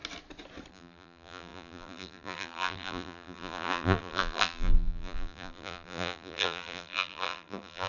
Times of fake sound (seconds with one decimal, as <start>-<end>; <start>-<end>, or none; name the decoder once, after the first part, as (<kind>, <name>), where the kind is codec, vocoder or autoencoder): 0.7-7.9 (vocoder, BigVGAN v2)